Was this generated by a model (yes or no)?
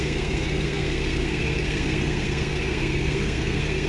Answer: yes